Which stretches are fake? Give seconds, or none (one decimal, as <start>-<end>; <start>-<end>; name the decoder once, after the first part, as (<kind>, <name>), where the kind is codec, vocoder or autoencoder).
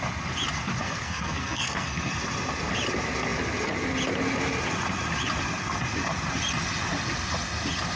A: 0.8-2.1 (codec, SNAC)